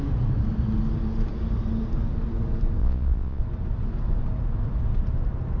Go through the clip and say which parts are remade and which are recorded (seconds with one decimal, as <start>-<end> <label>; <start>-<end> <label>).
0.0-2.8 recorded; 2.8-3.4 remade; 3.4-5.6 recorded